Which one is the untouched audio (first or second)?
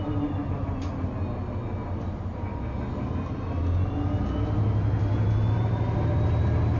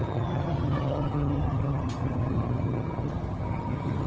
first